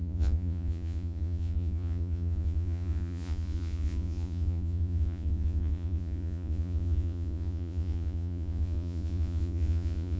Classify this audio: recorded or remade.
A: remade